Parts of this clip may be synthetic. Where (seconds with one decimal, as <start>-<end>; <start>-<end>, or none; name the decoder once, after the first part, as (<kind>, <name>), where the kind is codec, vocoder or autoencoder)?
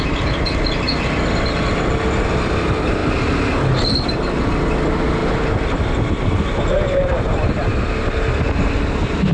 none